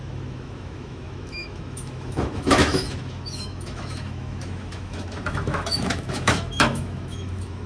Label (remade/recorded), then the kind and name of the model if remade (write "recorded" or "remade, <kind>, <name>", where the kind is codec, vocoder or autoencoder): remade, autoencoder, DAC-VAE